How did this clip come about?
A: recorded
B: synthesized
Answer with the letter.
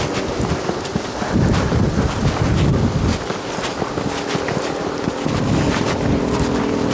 A